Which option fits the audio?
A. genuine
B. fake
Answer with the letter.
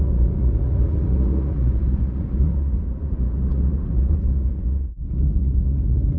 B